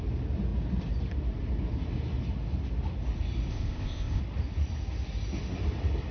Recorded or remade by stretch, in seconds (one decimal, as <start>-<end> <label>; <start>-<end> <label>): 0.0-3.5 recorded; 3.5-4.2 remade; 4.2-6.1 recorded